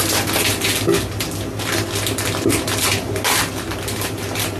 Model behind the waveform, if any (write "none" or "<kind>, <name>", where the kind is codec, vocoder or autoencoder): none